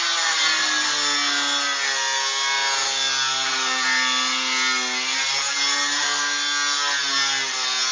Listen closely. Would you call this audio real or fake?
real